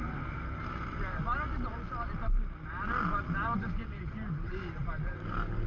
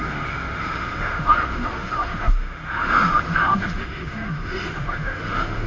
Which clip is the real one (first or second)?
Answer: first